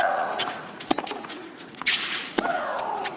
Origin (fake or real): fake